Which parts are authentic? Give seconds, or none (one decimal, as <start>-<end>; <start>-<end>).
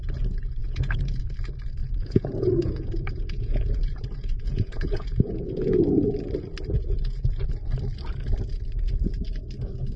0.0-0.6; 1.2-1.8; 5.8-10.0